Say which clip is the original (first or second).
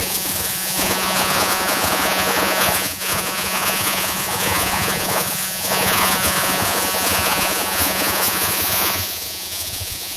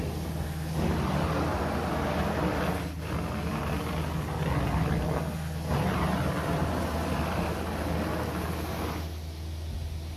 second